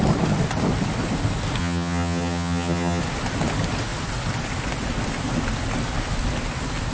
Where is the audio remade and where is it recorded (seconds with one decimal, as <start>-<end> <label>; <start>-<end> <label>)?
0.0-1.6 recorded; 1.6-3.0 remade; 3.0-6.9 recorded

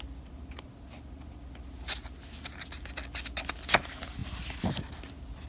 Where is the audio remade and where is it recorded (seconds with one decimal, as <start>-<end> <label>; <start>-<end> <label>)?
0.0-5.5 recorded

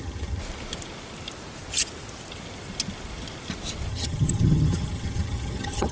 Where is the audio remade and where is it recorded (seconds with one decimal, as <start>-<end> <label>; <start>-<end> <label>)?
0.0-0.4 remade; 0.4-3.9 recorded; 3.9-5.9 remade

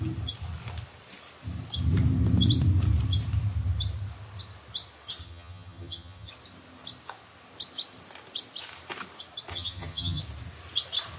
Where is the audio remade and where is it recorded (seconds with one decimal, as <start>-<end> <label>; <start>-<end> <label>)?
0.0-5.2 recorded; 5.2-6.3 remade; 6.3-9.5 recorded; 9.5-10.2 remade; 10.2-11.2 recorded

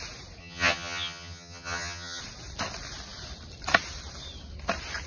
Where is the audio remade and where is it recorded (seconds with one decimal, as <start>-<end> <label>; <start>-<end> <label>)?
0.0-0.4 recorded; 0.4-2.2 remade; 2.2-5.1 recorded

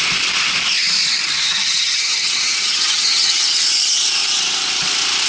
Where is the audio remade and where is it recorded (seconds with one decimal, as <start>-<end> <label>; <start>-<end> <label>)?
0.0-1.5 recorded; 1.5-3.4 remade; 3.4-5.3 recorded

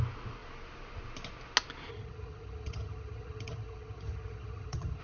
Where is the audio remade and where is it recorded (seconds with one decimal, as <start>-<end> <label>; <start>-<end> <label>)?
0.0-1.9 recorded; 1.9-5.0 remade

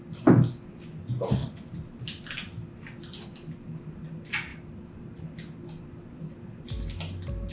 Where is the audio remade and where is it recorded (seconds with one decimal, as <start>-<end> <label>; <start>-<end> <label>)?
0.0-7.5 recorded